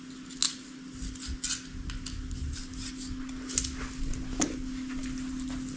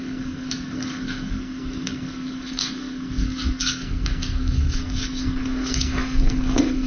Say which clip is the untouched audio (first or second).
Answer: first